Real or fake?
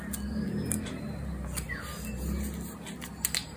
real